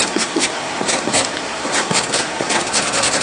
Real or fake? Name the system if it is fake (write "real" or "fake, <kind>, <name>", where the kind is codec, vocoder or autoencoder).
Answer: fake, codec, SNAC